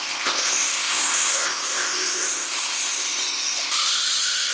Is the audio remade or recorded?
remade